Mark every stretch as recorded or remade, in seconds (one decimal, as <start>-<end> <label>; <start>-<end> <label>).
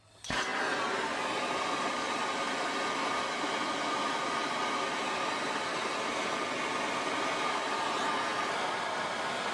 0.0-9.5 recorded